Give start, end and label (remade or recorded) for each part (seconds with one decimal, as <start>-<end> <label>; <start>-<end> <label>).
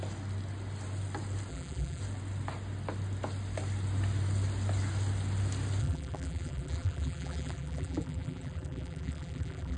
0.0-1.5 recorded; 1.5-2.0 remade; 2.0-5.8 recorded; 5.8-9.8 remade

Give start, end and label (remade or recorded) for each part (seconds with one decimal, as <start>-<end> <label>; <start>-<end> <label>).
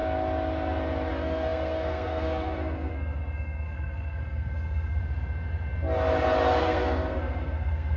0.0-1.1 recorded; 1.1-5.0 remade; 5.0-6.6 recorded; 6.6-8.0 remade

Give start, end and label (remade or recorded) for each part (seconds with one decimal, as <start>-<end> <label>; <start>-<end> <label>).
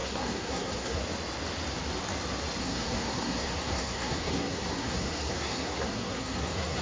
0.0-1.0 remade; 1.0-2.6 recorded; 2.6-6.8 remade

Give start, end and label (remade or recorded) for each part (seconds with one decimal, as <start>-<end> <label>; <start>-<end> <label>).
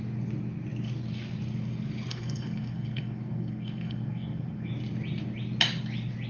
0.0-2.1 recorded; 2.1-4.7 remade; 4.7-6.3 recorded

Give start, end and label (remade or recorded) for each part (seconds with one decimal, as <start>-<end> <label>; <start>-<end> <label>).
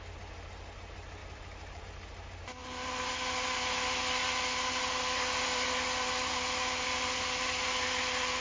0.0-1.2 recorded; 1.2-1.8 remade; 1.8-8.4 recorded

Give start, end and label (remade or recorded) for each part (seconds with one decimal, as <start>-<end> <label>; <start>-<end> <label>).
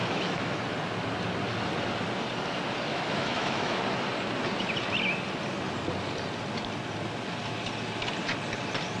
0.0-0.6 remade; 0.6-2.9 recorded; 2.9-3.8 remade; 3.8-9.0 recorded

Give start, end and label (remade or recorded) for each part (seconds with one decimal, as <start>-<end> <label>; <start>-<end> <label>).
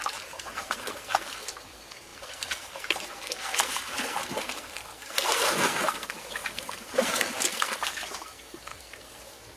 0.0-9.6 remade